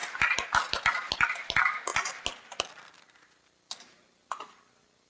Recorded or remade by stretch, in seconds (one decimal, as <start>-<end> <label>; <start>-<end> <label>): 0.0-1.9 remade; 1.9-2.6 recorded; 2.6-5.1 remade